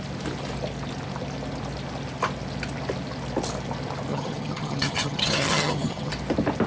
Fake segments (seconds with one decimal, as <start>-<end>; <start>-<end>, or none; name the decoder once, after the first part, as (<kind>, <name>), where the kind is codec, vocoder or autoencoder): 4.1-6.1 (vocoder, HiFi-GAN)